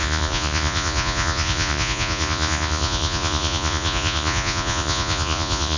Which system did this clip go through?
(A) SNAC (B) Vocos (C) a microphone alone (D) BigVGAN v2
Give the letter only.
B